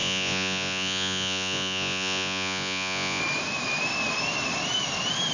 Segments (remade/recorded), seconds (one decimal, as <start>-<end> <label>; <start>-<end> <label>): 0.0-3.2 remade; 3.2-5.3 recorded